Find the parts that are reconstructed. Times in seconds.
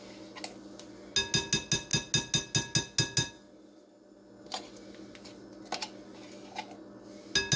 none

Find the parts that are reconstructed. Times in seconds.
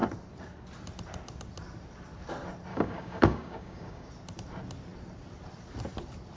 2.7-4.1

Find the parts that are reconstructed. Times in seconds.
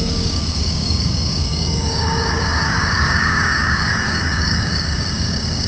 0.0-5.7